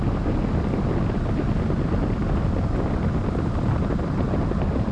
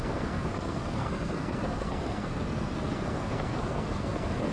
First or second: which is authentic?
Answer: first